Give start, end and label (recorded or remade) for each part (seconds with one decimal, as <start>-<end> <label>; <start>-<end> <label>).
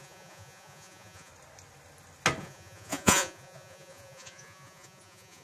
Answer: 0.0-1.3 remade; 1.3-2.4 recorded; 2.4-5.4 remade